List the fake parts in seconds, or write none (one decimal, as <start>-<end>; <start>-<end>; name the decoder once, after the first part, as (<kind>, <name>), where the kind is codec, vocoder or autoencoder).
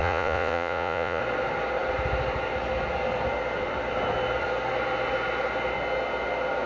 0.0-1.2 (vocoder, Vocos)